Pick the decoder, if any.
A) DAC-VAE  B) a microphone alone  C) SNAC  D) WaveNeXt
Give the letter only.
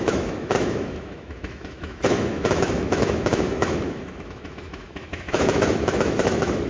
A